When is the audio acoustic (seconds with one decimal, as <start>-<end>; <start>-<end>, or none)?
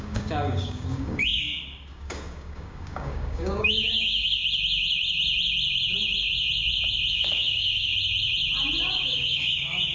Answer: 4.4-7.1; 7.9-8.9